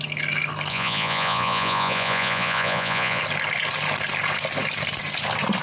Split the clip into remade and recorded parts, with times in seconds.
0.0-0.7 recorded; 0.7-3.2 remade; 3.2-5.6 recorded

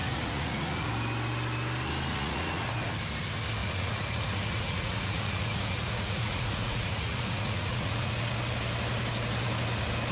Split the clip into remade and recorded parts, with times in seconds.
0.0-0.9 remade; 0.9-2.1 recorded; 2.1-2.7 remade; 2.7-3.6 recorded; 3.6-8.1 remade; 8.1-10.1 recorded

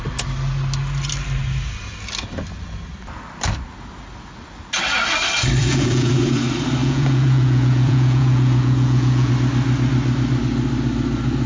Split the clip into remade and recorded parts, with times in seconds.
0.0-5.6 recorded; 5.6-6.1 remade; 6.1-6.8 recorded; 6.8-9.3 remade; 9.3-11.5 recorded